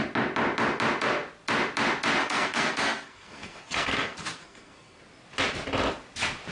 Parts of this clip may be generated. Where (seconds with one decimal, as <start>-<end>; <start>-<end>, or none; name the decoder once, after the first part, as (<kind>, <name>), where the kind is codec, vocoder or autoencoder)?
2.2-5.0 (codec, SNAC)